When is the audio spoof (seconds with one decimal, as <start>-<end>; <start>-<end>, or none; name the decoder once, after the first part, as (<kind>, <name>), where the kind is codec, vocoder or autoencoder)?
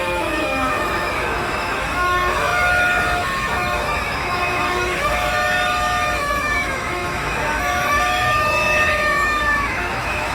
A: 0.0-10.3 (autoencoder, DAC-VAE)